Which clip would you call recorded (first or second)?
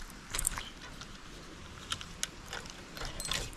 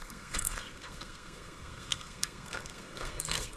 first